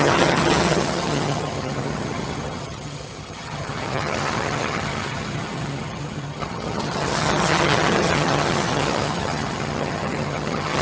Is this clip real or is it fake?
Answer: fake